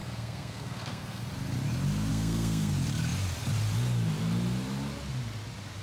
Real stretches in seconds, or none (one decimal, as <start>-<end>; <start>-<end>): 1.2-2.1; 2.7-5.8